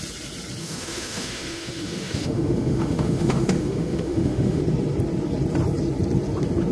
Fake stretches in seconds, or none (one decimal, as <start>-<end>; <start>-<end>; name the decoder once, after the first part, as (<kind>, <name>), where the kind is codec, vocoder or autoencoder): 0.6-4.6 (autoencoder, DAC-VAE)